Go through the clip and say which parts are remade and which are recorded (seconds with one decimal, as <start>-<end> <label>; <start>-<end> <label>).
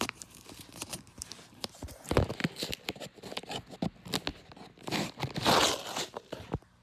0.0-2.4 remade; 2.4-6.0 recorded; 6.0-6.8 remade